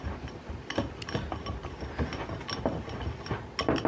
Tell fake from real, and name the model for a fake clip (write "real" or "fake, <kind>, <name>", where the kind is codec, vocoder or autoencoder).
real